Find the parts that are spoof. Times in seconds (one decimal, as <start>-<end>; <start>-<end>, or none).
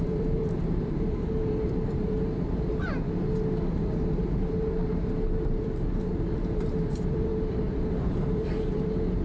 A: 0.0-2.7; 4.2-7.3; 7.9-9.2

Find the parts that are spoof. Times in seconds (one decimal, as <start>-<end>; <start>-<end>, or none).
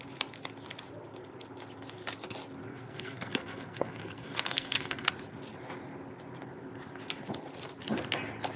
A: 2.7-5.1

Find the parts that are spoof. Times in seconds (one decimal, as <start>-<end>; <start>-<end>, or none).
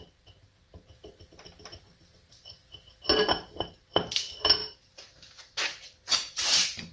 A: 4.6-6.9